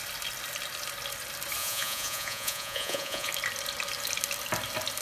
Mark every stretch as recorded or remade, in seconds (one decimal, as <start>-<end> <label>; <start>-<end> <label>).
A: 0.0-1.6 recorded; 1.6-3.3 remade; 3.3-5.0 recorded